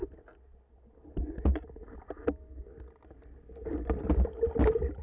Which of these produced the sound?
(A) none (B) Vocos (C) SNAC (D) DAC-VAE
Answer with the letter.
A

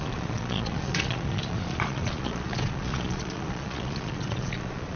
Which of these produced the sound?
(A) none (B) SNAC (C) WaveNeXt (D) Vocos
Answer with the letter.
D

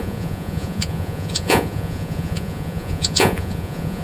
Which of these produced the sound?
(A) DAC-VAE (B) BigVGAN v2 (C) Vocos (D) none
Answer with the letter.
C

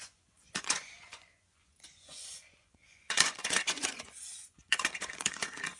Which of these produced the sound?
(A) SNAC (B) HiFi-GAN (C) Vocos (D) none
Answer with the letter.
C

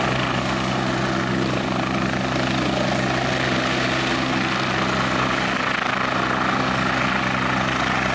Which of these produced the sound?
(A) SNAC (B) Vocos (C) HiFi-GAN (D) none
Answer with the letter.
D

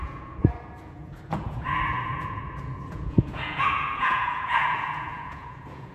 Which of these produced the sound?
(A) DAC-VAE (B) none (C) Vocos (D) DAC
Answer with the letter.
C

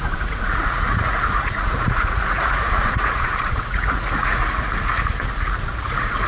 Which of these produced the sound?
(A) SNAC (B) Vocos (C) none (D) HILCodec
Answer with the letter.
B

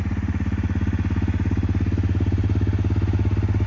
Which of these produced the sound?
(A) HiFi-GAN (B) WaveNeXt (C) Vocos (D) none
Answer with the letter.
D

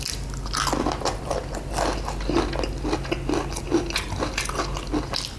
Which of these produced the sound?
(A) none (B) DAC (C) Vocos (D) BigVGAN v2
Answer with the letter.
A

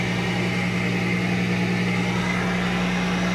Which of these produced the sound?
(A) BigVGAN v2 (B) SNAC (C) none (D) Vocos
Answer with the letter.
C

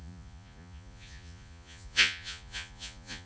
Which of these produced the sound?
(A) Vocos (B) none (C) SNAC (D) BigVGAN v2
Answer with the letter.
A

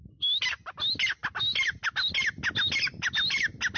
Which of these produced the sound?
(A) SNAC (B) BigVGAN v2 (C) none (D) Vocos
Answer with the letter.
C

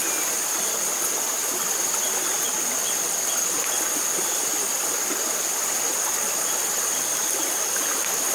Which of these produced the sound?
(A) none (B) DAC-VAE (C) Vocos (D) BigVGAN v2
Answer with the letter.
A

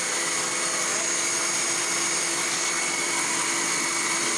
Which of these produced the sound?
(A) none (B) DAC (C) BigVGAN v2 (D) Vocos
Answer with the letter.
A